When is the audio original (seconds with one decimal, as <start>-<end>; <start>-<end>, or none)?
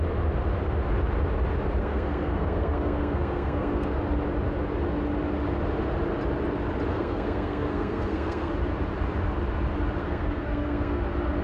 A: 0.0-1.8; 4.0-6.9; 8.5-10.0; 11.0-11.4